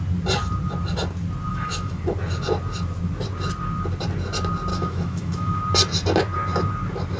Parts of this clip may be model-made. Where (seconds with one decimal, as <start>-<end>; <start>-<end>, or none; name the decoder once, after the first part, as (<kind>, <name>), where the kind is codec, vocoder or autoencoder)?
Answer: 1.5-2.0 (autoencoder, DAC-VAE); 4.7-5.6